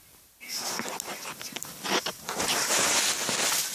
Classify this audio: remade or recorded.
recorded